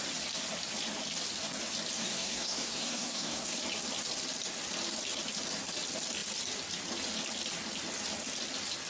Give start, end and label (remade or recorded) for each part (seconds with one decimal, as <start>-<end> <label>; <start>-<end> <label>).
0.0-2.0 recorded; 2.0-3.6 remade; 3.6-8.9 recorded